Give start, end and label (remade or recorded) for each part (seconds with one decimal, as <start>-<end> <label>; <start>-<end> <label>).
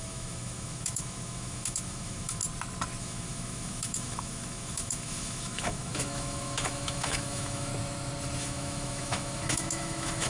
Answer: 0.0-2.4 remade; 2.4-3.0 recorded; 3.0-7.7 remade; 7.7-8.4 recorded; 8.4-10.3 remade